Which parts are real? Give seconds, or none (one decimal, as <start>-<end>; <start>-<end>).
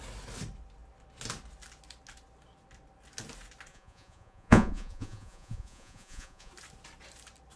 0.0-3.7; 6.5-7.6